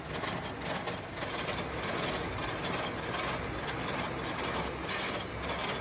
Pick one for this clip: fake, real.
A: real